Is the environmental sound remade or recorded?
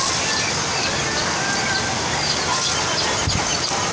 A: recorded